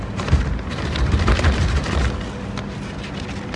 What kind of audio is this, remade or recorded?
recorded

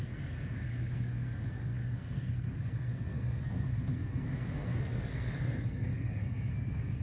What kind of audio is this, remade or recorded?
remade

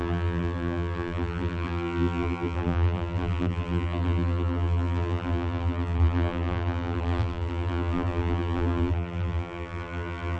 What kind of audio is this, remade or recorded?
remade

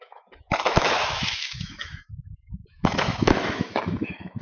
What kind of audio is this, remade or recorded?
remade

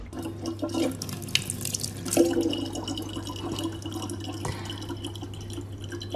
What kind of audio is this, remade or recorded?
recorded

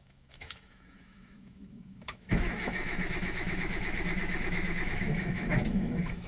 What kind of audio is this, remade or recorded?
remade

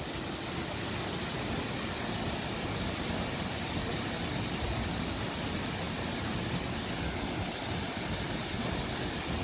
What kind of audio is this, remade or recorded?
recorded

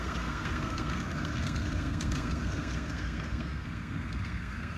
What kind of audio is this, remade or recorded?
remade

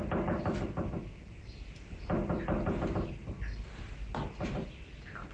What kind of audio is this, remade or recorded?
recorded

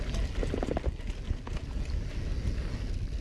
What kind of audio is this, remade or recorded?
recorded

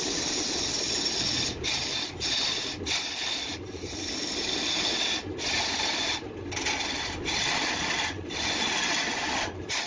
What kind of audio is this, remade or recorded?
recorded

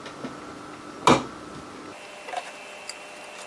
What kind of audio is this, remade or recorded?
recorded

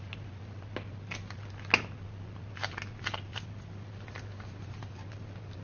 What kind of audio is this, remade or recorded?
recorded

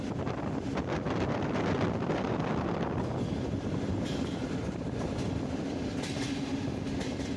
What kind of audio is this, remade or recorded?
recorded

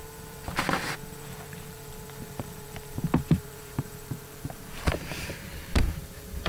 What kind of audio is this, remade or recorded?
remade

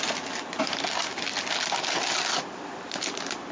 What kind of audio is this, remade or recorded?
recorded